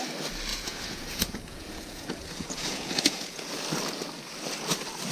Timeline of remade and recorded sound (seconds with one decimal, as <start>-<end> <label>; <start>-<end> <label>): 0.0-0.5 recorded; 0.5-3.6 remade; 3.6-5.1 recorded